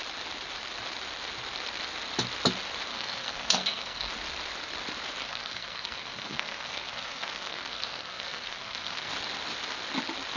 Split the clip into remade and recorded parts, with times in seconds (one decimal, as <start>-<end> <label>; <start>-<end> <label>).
0.0-2.9 recorded; 2.9-4.1 remade; 4.1-5.2 recorded; 5.2-9.1 remade; 9.1-10.4 recorded